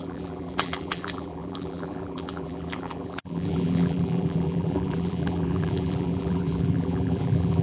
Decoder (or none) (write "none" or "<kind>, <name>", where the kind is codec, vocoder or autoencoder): vocoder, BigVGAN v2